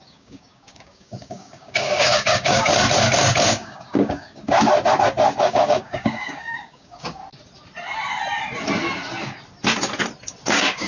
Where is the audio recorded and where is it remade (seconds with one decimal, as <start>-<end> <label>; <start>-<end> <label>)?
0.0-2.7 remade; 2.7-3.5 recorded; 3.5-4.4 remade; 4.4-5.4 recorded; 5.4-7.2 remade; 7.2-10.5 recorded; 10.5-10.9 remade